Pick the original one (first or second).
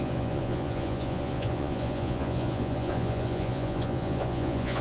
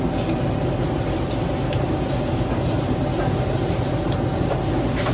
second